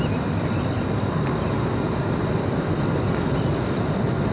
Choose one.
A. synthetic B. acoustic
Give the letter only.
B